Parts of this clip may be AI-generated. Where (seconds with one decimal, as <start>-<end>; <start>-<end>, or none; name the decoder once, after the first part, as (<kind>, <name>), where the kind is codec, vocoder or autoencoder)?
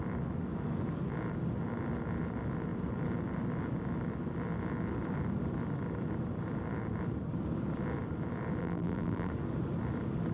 8.6-9.3 (vocoder, BigVGAN v2)